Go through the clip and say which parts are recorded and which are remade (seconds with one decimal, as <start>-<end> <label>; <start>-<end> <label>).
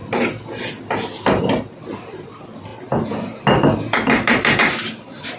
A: 0.0-1.4 recorded; 1.4-2.7 remade; 2.7-4.6 recorded; 4.6-5.4 remade